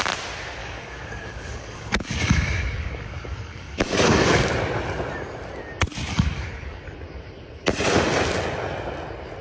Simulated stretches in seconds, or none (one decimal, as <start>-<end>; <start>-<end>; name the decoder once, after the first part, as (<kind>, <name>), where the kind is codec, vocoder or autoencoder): 0.6-4.5 (codec, DAC); 6.1-6.8